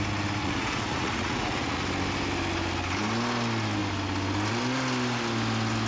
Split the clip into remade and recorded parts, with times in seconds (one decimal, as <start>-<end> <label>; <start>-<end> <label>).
0.0-0.4 recorded; 0.4-1.8 remade; 1.8-5.9 recorded